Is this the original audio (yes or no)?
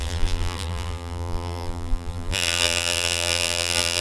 no